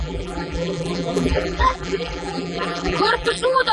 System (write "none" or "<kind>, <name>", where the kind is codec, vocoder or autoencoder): vocoder, BigVGAN v2